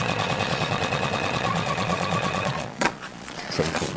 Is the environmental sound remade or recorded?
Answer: remade